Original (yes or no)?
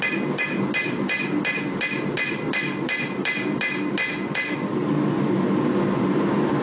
yes